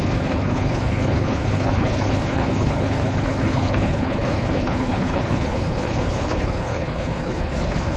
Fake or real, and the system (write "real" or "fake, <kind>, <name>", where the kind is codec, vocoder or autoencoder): fake, codec, HILCodec